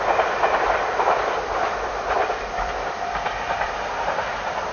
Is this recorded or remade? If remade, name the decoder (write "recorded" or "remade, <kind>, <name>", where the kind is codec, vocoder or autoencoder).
remade, vocoder, BigVGAN v2